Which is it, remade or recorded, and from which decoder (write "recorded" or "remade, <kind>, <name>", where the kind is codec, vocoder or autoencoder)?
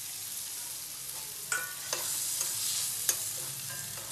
recorded